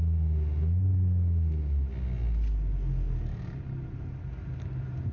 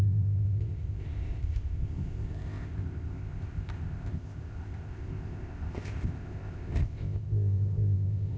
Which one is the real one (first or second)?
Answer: first